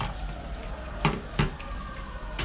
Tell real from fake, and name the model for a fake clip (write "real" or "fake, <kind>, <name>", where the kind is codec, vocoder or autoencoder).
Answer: real